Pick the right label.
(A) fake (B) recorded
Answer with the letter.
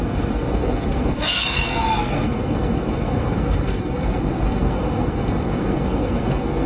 A